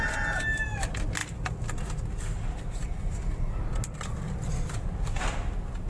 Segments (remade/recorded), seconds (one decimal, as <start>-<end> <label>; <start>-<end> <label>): 0.0-5.9 recorded